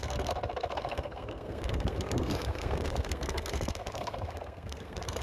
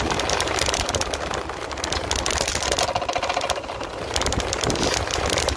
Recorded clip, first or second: second